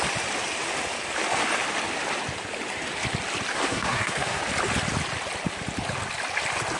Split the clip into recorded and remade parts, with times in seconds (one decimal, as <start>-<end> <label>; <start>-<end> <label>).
0.0-3.5 recorded; 3.5-4.4 remade; 4.4-6.8 recorded